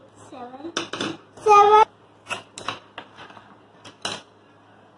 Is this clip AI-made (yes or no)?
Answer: no